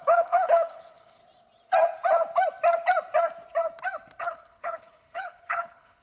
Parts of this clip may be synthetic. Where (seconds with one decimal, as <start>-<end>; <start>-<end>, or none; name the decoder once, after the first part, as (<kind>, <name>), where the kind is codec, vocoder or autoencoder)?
0.0-1.2 (codec, HILCodec); 4.2-6.0